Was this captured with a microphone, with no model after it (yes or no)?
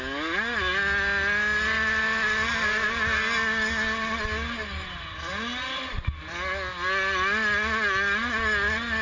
yes